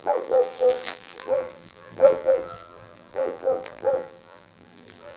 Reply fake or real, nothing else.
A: fake